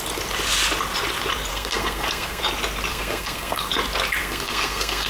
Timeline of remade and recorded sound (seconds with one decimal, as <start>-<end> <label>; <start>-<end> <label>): 0.0-1.5 recorded; 1.5-2.4 remade; 2.4-2.9 recorded; 2.9-3.7 remade; 3.7-4.2 recorded; 4.2-5.1 remade